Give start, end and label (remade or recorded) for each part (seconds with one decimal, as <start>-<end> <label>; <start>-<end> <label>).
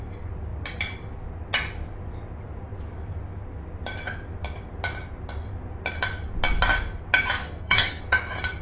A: 0.0-7.4 recorded; 7.4-8.0 remade; 8.0-8.6 recorded